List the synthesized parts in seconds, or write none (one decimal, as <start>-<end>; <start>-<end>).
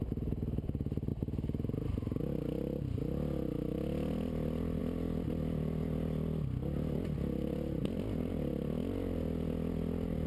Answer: none